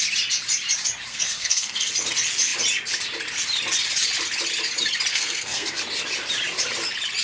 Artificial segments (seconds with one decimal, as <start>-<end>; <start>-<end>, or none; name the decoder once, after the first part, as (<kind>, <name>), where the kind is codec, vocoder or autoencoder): 1.1-1.9 (codec, SNAC); 5.1-5.8